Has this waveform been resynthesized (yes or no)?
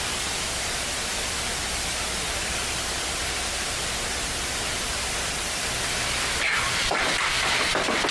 yes